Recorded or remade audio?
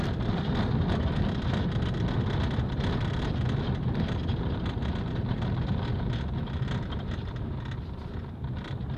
recorded